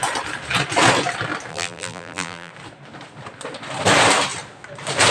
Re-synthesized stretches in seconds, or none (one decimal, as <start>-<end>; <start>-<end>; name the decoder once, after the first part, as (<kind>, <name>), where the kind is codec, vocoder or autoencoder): 1.5-2.5 (vocoder, BigVGAN v2)